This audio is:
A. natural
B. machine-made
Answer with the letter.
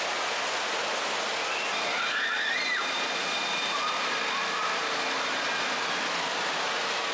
A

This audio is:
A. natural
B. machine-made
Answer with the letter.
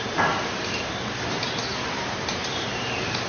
B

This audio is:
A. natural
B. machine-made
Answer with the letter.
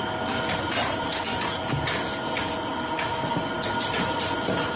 A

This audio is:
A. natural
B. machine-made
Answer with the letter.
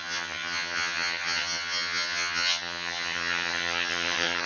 B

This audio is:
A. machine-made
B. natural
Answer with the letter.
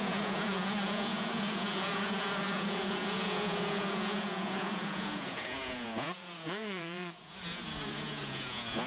A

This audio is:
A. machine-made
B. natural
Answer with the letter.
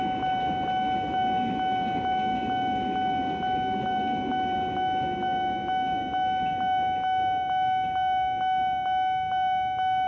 B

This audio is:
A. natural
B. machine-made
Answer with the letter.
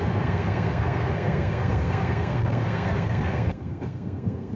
B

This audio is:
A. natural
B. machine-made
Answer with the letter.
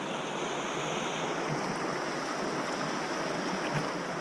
A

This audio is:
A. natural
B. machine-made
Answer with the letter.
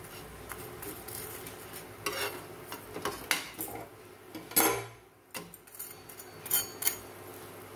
A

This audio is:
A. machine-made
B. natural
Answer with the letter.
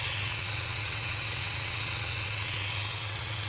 A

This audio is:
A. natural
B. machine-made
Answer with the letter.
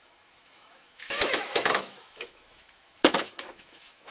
B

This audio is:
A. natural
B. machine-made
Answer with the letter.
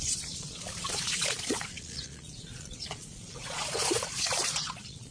B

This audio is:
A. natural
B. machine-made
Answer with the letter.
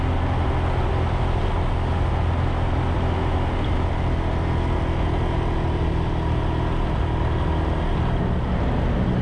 A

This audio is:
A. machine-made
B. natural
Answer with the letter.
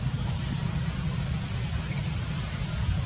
B